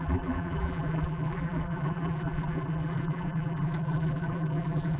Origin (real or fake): fake